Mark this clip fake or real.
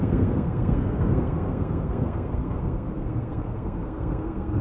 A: fake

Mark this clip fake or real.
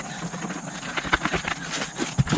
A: real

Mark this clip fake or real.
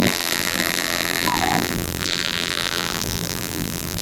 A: fake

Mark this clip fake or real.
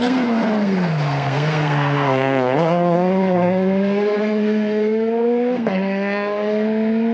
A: fake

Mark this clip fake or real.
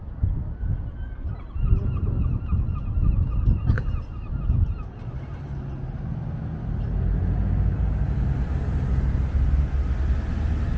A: real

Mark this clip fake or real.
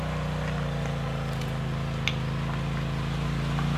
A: real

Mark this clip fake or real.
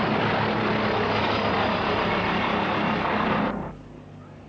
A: real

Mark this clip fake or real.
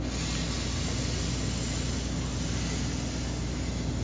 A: real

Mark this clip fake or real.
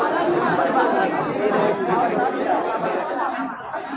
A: real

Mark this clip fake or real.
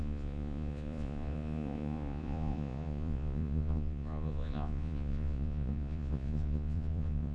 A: fake